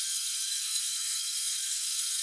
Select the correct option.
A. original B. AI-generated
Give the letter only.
B